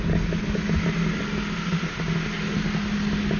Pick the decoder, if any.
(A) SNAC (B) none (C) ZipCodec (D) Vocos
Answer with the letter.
B